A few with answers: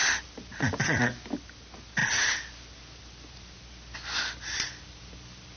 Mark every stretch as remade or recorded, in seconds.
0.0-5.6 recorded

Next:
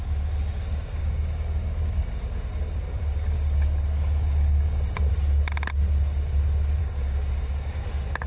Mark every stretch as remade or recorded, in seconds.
0.0-1.0 recorded; 1.0-5.1 remade; 5.1-6.8 recorded; 6.8-7.8 remade; 7.8-8.3 recorded